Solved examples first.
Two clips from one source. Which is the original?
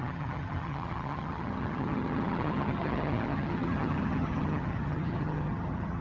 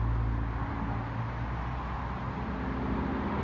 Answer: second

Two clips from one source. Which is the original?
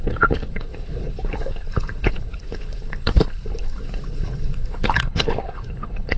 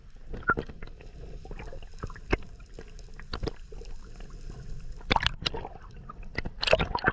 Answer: second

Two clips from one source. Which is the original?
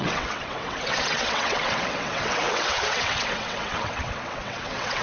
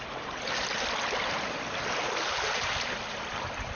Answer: second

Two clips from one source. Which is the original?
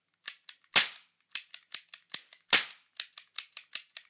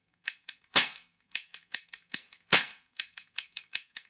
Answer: first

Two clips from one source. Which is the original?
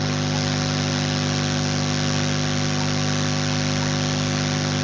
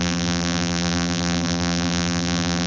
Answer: first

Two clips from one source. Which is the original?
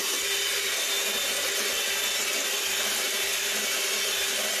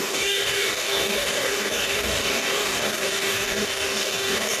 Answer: first